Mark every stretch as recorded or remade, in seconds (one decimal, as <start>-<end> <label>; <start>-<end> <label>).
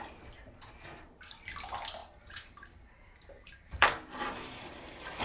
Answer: 0.0-2.0 recorded; 2.0-5.2 remade